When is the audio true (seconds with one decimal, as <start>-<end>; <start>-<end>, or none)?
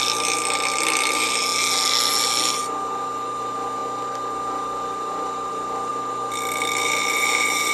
0.0-7.7